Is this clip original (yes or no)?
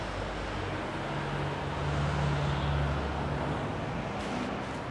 yes